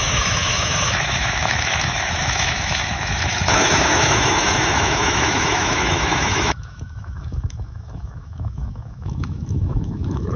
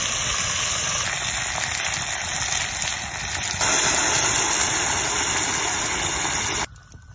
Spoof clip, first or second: first